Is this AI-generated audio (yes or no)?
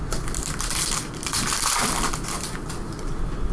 no